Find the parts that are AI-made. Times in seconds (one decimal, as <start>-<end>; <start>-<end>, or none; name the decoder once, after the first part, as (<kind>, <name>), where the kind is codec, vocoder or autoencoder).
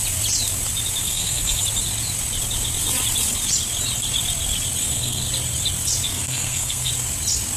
1.0-1.6 (codec, SNAC); 4.8-5.3; 6.1-6.9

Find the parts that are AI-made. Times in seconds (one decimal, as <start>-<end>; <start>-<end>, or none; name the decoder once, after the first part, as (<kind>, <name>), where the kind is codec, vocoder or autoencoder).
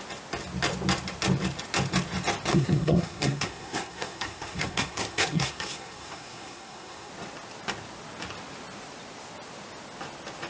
2.5-7.1 (codec, SNAC)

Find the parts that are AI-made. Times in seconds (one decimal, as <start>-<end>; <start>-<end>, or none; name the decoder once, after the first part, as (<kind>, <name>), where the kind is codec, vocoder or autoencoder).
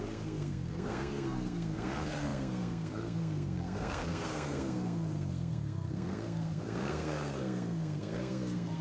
0.0-8.8 (codec, SNAC)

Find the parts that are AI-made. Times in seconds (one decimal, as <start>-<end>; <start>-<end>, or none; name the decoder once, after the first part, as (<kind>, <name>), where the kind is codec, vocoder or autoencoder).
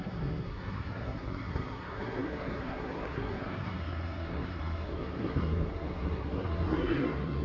0.0-7.4 (codec, SNAC)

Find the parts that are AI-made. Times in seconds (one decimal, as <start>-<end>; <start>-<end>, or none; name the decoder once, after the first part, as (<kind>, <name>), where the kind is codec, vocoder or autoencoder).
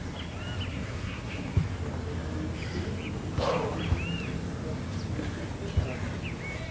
0.7-1.6 (codec, SNAC)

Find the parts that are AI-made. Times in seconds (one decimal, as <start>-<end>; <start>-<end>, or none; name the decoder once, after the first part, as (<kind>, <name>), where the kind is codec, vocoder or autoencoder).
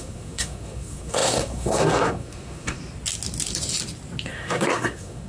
0.0-2.8 (codec, SNAC); 4.3-5.3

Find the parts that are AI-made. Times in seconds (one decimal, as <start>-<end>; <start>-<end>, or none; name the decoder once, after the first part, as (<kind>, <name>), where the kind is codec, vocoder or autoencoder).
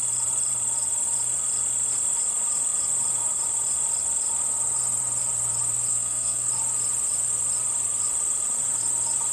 5.9-6.5 (codec, SNAC)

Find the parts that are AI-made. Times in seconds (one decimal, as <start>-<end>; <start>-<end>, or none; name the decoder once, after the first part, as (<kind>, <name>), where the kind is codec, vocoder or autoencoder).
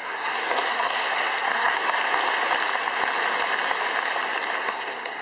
0.0-2.0 (codec, SNAC); 4.6-5.2